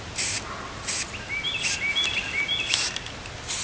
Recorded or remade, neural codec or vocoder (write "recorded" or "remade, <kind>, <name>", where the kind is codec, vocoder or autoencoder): recorded